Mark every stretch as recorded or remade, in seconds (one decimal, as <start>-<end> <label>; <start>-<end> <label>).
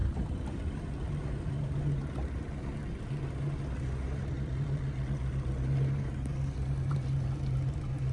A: 0.0-8.1 recorded